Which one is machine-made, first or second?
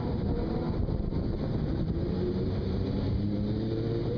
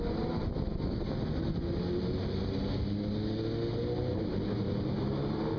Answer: first